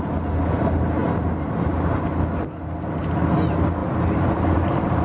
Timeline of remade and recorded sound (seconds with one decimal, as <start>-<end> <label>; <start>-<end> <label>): 0.0-3.8 recorded; 3.8-5.0 remade